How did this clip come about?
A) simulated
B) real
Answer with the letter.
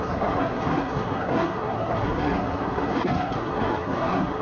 A